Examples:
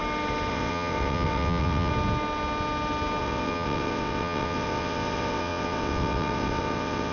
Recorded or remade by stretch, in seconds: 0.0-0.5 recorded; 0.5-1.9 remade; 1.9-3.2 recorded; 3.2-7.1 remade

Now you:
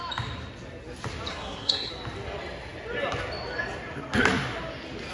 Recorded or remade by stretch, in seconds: 0.0-1.3 recorded; 1.3-1.9 remade; 1.9-5.1 recorded

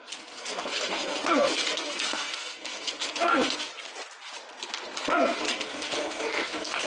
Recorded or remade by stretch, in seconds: 0.0-3.7 remade; 3.7-5.0 recorded; 5.0-6.9 remade

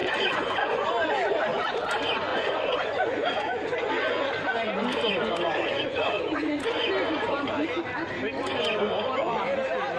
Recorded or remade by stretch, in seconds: 0.0-1.1 remade; 1.1-2.3 recorded; 2.3-3.9 remade; 3.9-5.9 recorded; 5.9-6.9 remade; 6.9-10.0 recorded

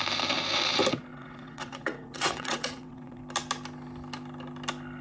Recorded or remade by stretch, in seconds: 0.0-1.1 recorded; 1.1-3.2 remade; 3.2-5.0 recorded

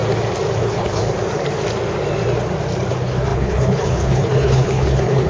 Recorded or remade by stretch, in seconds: 0.0-0.6 recorded; 0.6-1.0 remade; 1.0-2.9 recorded; 2.9-5.3 remade

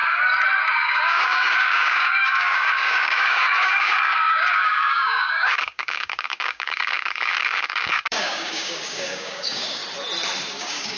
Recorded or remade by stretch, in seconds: 0.0-0.6 recorded; 0.6-9.8 remade; 9.8-10.5 recorded; 10.5-11.0 remade